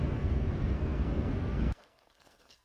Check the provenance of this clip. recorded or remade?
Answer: remade